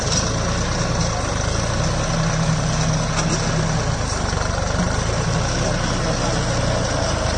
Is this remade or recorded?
recorded